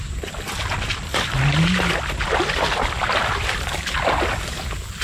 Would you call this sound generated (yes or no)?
no